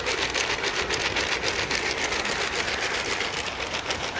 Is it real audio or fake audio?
real